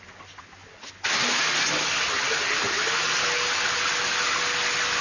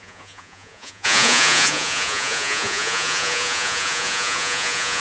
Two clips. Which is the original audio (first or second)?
first